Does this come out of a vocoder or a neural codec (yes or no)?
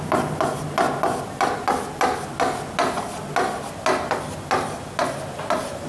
no